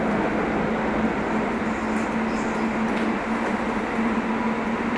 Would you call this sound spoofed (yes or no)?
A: no